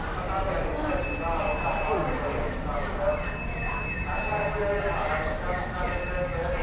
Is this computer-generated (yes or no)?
no